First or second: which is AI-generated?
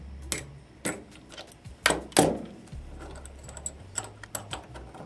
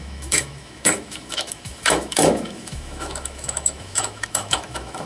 second